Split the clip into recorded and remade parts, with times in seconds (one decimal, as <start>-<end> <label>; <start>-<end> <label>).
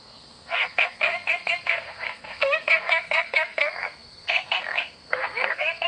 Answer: 0.0-5.9 remade